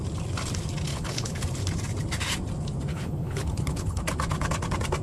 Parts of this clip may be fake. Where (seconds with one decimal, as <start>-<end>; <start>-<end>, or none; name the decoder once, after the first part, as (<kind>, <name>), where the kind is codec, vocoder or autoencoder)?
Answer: 0.9-1.4 (codec, HILCodec); 2.9-4.0